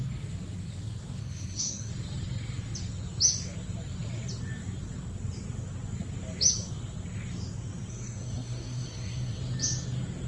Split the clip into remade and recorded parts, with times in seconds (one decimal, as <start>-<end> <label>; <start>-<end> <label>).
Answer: 0.0-1.2 recorded; 1.2-1.9 remade; 1.9-7.9 recorded; 7.9-9.4 remade; 9.4-10.3 recorded